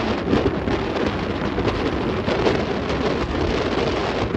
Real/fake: real